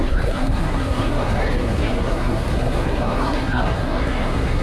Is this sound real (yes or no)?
no